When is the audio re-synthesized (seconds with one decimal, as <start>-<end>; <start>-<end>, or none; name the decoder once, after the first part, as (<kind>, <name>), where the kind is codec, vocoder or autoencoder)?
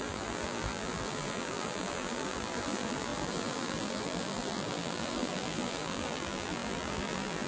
0.0-7.5 (vocoder, BigVGAN v2)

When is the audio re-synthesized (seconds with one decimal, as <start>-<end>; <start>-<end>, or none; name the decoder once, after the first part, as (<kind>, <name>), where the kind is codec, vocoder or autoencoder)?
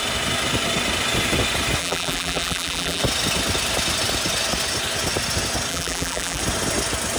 1.8-3.0 (vocoder, BigVGAN v2); 5.7-6.4